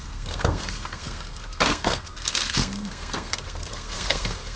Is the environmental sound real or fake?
fake